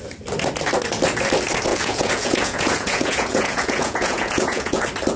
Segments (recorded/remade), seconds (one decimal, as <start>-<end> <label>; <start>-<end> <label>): 0.0-1.7 recorded; 1.7-4.8 remade; 4.8-5.2 recorded